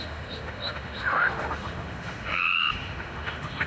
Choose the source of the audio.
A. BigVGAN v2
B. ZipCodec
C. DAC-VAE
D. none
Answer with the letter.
C